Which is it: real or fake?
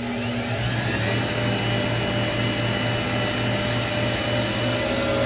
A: real